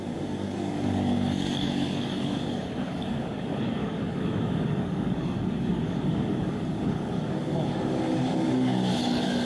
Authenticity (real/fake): fake